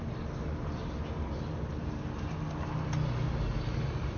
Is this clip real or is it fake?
real